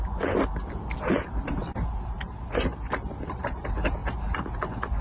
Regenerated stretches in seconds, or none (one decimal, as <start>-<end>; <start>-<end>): none